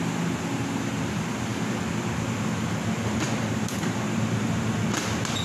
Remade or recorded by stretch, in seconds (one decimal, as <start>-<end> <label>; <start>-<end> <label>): 0.0-5.4 recorded